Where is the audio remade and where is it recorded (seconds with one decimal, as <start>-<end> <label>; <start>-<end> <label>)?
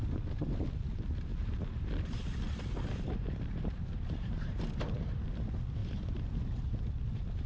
0.0-1.3 recorded; 1.3-5.1 remade; 5.1-5.8 recorded; 5.8-6.7 remade; 6.7-7.5 recorded